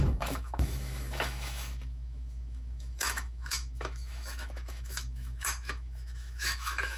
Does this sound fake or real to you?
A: fake